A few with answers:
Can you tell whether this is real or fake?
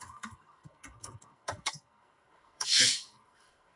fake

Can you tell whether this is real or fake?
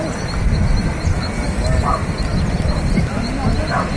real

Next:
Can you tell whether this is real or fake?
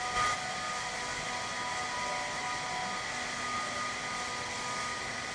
real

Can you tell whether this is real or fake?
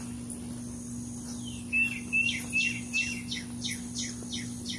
real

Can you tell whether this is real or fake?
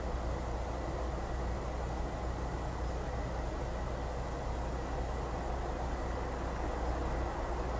real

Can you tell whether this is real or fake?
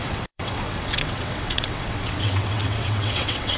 fake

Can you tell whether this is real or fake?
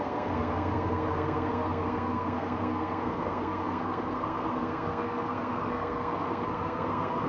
fake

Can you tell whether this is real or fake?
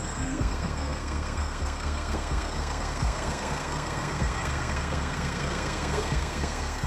fake